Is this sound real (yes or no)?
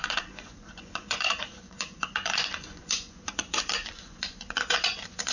no